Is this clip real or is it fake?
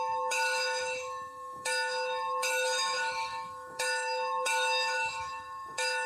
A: fake